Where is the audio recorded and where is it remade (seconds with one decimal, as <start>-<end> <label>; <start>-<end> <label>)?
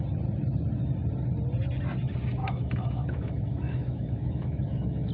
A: 0.0-2.4 recorded; 2.4-5.1 remade